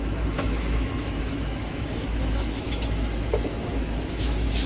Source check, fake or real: fake